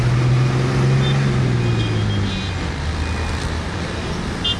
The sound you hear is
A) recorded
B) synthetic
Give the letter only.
A